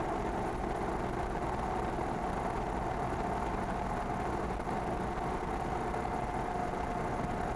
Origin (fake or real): real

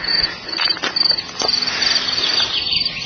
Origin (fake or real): real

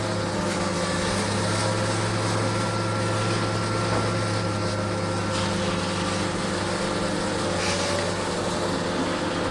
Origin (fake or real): real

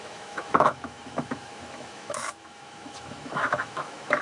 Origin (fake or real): fake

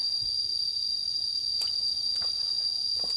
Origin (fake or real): real